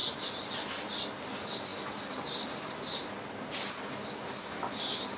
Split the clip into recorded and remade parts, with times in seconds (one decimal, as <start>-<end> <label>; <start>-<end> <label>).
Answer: 0.0-5.2 recorded